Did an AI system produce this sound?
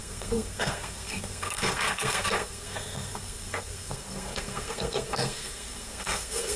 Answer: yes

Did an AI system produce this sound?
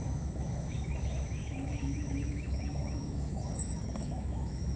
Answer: yes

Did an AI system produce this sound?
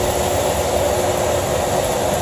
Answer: no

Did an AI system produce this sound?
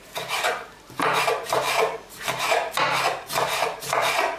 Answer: yes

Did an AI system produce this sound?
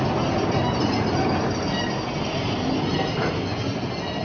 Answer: no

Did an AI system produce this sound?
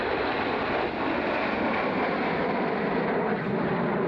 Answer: no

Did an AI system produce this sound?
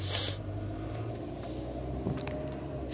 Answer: no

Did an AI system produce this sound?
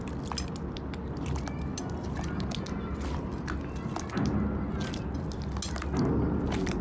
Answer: no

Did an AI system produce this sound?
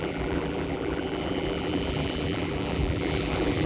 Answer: yes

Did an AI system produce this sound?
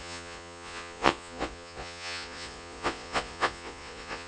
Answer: yes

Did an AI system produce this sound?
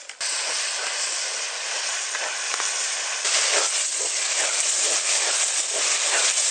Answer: no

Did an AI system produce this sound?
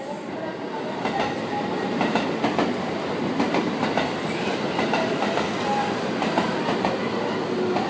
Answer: no